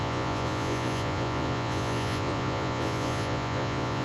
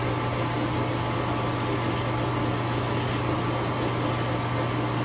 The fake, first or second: first